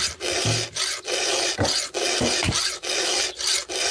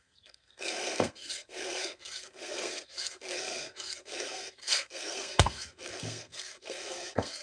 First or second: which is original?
first